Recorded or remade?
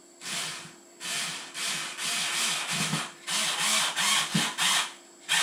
recorded